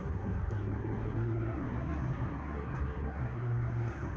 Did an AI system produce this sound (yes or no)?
yes